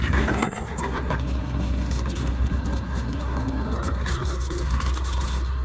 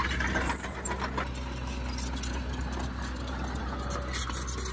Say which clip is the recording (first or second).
second